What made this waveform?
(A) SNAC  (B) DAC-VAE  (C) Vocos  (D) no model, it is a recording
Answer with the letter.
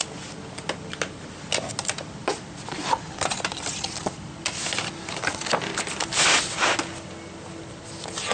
D